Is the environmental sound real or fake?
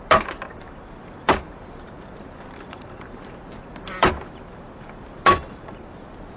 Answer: fake